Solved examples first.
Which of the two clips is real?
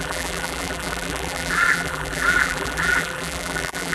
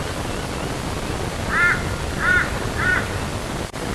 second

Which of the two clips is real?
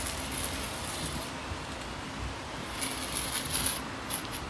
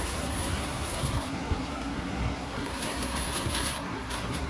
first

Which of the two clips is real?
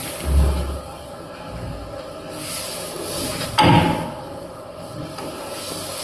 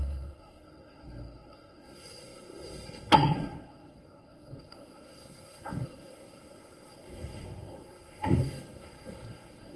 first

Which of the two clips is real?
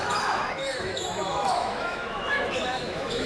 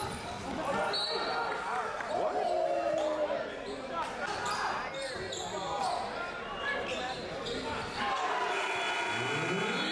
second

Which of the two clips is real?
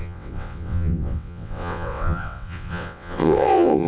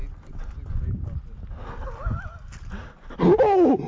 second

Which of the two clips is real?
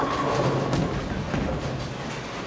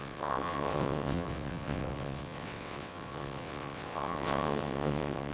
first